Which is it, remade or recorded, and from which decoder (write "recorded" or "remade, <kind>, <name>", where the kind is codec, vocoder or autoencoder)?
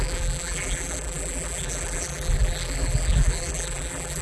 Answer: remade, vocoder, BigVGAN v2